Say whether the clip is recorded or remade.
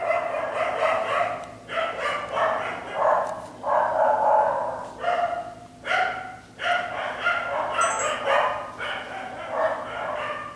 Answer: recorded